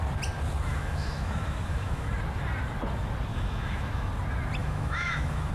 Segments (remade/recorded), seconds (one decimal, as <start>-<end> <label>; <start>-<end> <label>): 0.0-0.7 recorded; 0.7-2.1 remade; 2.1-3.3 recorded; 3.3-4.1 remade; 4.1-4.6 recorded; 4.6-5.5 remade